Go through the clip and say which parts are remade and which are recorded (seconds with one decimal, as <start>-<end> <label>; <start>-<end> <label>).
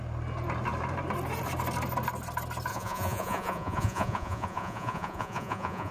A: 0.0-2.7 recorded; 2.7-5.9 remade